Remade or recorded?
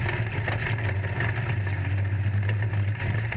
recorded